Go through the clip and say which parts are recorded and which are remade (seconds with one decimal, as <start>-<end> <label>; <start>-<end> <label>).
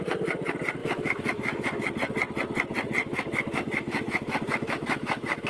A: 0.0-0.8 recorded; 0.8-1.9 remade; 1.9-3.0 recorded; 3.0-5.5 remade